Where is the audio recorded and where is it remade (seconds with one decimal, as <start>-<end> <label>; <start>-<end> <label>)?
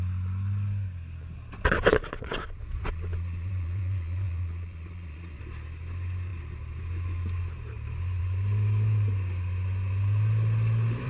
0.0-1.9 recorded; 1.9-5.4 remade; 5.4-11.1 recorded